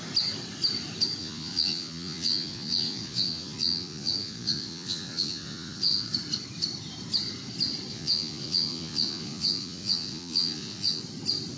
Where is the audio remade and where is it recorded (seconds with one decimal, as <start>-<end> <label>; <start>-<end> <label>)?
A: 0.0-1.2 recorded; 1.2-6.1 remade; 6.1-7.9 recorded; 7.9-11.0 remade; 11.0-11.6 recorded